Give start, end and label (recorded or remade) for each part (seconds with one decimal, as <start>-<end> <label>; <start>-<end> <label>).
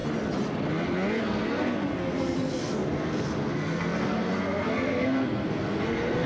0.0-1.2 recorded; 1.2-6.3 remade